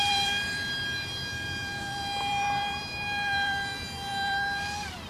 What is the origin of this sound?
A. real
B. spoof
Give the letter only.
B